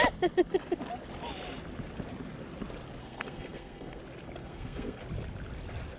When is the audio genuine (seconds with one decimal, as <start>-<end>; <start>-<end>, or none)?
0.0-3.0; 4.0-4.4; 5.0-6.0